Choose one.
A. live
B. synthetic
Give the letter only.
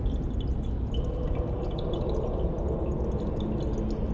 A